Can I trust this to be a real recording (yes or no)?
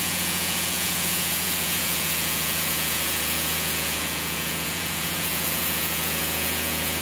no